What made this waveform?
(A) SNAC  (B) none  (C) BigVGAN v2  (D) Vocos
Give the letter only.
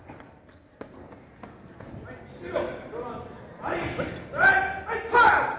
B